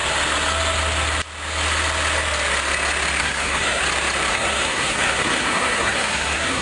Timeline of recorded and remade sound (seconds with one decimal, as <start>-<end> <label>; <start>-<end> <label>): 0.0-3.2 recorded; 3.2-3.8 remade; 3.8-4.3 recorded; 4.3-6.6 remade